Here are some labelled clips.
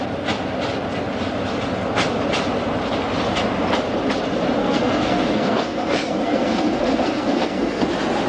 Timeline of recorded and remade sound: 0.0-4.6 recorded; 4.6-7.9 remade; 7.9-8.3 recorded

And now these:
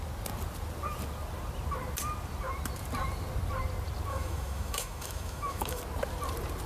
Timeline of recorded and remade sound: 0.0-4.1 recorded; 4.1-5.8 remade; 5.8-6.7 recorded

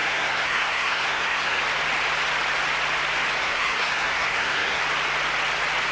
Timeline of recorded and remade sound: 0.0-1.6 remade; 1.6-3.4 recorded; 3.4-4.8 remade; 4.8-5.9 recorded